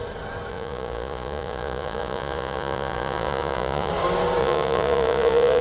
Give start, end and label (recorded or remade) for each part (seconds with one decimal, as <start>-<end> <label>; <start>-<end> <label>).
0.0-0.5 recorded; 0.5-3.9 remade; 3.9-4.4 recorded; 4.4-5.6 remade